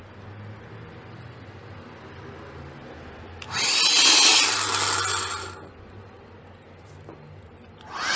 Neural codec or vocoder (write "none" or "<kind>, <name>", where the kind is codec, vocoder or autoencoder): none